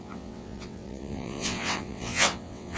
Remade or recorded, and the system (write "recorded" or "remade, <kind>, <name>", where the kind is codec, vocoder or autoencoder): remade, vocoder, WaveNeXt